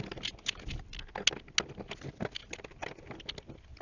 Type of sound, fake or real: real